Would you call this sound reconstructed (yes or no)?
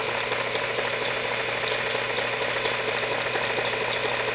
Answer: no